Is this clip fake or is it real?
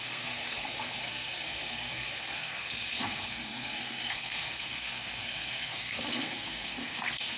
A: fake